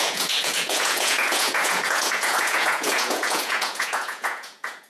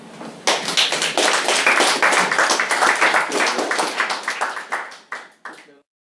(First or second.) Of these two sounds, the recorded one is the second